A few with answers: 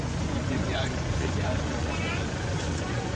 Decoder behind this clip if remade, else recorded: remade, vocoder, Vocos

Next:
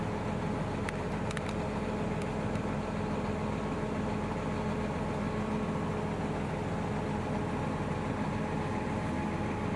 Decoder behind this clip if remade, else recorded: recorded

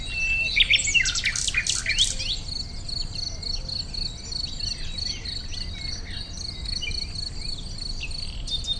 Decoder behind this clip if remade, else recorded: recorded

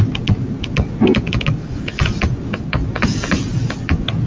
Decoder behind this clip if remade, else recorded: recorded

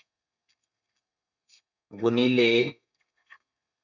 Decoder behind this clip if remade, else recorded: remade, codec, SNAC